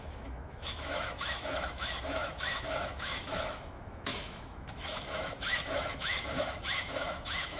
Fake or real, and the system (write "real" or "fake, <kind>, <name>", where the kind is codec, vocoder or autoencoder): fake, autoencoder, DAC-VAE